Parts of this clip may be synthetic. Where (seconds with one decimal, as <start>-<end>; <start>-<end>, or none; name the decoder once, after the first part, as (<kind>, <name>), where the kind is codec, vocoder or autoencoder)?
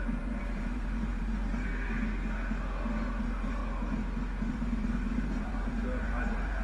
0.0-1.7 (vocoder, BigVGAN v2); 3.2-3.6; 4.5-6.6